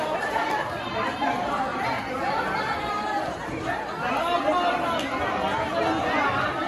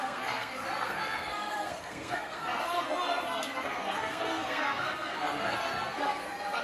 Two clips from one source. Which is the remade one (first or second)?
second